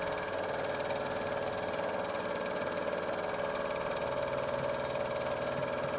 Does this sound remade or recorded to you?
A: recorded